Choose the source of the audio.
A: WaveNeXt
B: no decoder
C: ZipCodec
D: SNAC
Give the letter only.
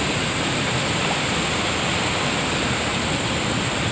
B